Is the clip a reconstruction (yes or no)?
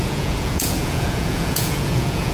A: yes